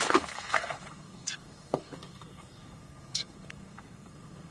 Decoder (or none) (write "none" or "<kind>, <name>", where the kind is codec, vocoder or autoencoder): codec, SNAC